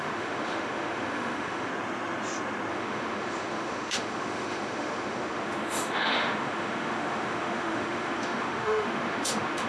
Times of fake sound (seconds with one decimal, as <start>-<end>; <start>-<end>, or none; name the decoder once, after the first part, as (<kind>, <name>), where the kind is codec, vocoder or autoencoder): 0.0-1.7 (autoencoder, DAC-VAE); 2.7-9.7